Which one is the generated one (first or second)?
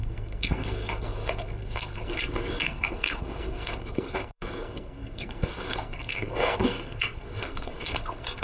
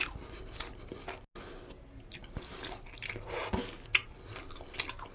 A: first